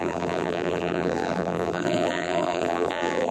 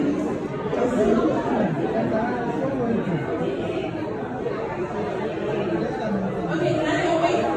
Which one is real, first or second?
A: second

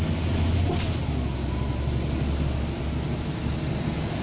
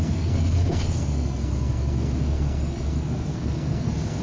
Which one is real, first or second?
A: first